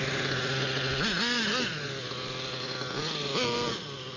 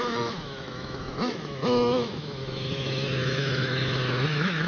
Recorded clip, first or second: first